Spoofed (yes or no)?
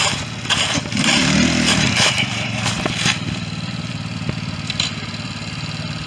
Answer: yes